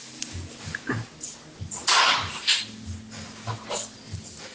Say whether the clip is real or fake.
real